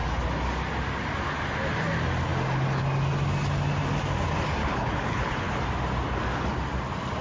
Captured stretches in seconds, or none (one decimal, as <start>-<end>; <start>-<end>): 0.0-4.6; 5.6-7.2